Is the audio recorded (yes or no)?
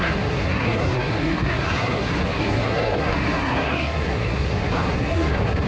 no